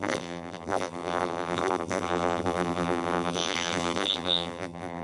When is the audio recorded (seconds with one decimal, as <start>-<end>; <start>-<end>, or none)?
none